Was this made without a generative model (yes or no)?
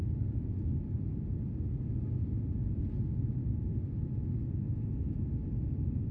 yes